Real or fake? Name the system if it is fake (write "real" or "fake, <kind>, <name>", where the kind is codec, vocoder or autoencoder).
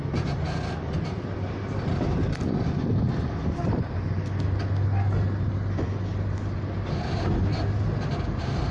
real